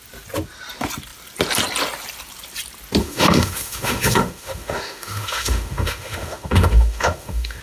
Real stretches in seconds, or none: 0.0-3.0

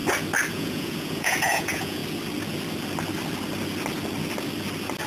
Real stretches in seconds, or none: 0.0-0.5; 2.0-5.1